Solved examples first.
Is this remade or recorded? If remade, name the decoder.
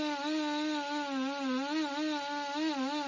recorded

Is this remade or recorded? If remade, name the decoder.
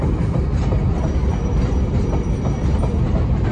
recorded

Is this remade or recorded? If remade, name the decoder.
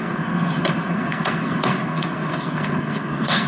remade, codec, SNAC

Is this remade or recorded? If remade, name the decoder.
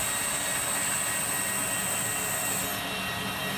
recorded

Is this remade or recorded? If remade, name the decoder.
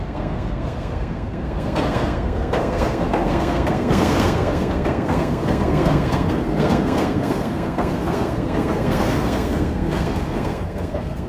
remade, codec, SNAC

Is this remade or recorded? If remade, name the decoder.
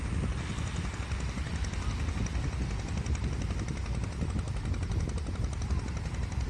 recorded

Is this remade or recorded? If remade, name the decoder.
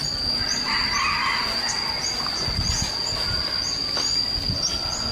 recorded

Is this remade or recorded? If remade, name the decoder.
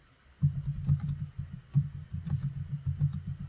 recorded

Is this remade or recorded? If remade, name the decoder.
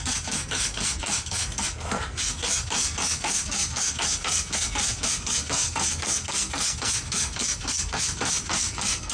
remade, codec, SNAC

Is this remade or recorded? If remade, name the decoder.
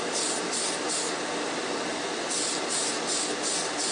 recorded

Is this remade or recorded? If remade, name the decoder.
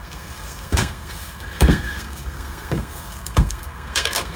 remade, codec, SNAC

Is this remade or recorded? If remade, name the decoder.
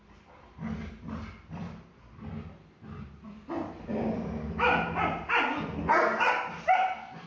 recorded